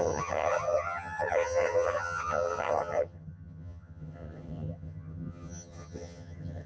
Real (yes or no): no